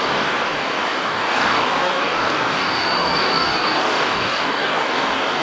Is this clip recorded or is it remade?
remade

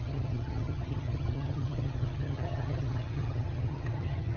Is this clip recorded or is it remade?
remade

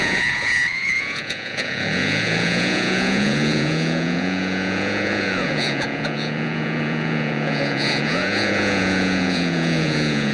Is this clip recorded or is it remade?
remade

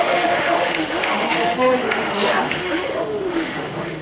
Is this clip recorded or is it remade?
remade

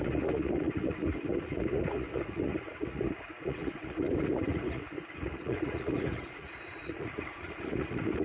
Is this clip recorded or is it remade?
remade